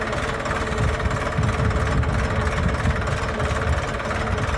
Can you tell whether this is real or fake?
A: real